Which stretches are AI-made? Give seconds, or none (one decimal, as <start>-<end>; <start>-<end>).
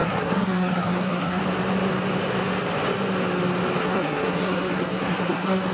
0.0-1.4; 3.8-5.7